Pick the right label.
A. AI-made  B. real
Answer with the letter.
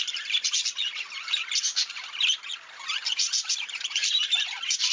A